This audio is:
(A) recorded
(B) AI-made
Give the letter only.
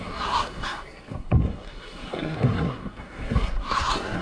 B